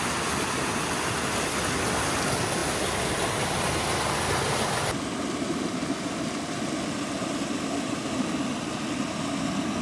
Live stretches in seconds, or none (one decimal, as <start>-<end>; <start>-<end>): 0.0-9.8